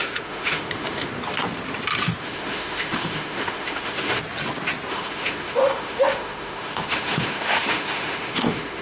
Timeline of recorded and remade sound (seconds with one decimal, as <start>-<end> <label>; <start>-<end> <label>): 0.0-1.1 remade; 1.1-2.2 recorded; 2.2-4.2 remade; 4.2-4.9 recorded; 4.9-8.8 remade